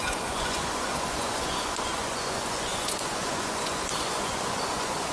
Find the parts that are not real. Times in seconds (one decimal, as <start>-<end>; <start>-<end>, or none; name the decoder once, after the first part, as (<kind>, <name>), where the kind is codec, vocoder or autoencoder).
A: 0.0-5.1 (vocoder, Vocos)